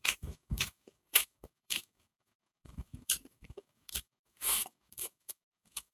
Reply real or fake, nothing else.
fake